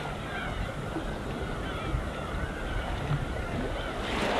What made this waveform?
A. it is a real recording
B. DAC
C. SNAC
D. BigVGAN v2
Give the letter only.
A